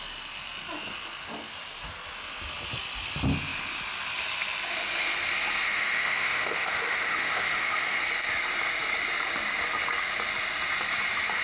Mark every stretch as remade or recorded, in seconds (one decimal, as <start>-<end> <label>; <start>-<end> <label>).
0.0-5.6 recorded; 5.6-8.0 remade; 8.0-11.4 recorded

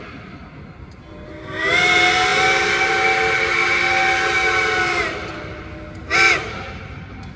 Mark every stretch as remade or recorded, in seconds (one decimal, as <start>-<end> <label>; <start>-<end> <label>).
0.0-7.4 recorded

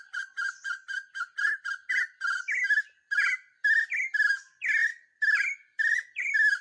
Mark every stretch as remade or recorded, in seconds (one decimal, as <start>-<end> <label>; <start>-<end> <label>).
0.0-6.6 recorded